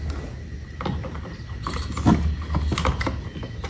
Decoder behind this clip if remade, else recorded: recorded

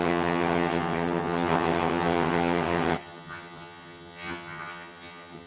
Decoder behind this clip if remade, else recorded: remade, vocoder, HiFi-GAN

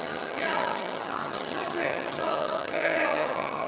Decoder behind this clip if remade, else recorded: remade, vocoder, HiFi-GAN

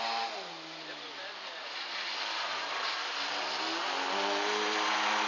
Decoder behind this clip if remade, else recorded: recorded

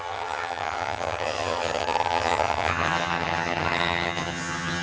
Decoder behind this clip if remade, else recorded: remade, vocoder, HiFi-GAN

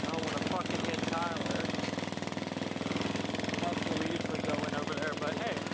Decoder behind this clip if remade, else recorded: recorded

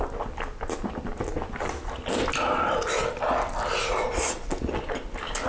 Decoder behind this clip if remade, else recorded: recorded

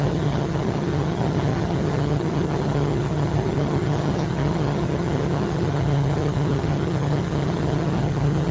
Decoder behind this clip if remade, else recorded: remade, vocoder, HiFi-GAN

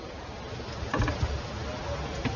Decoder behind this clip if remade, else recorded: recorded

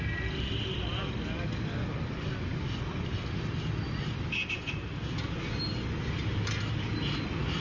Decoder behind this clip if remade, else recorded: recorded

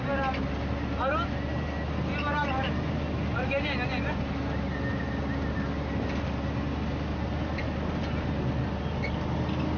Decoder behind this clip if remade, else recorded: recorded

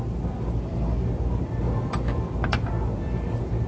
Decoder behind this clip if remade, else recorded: recorded